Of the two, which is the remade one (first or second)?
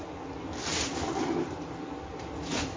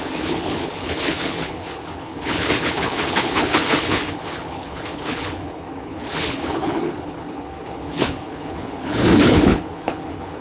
second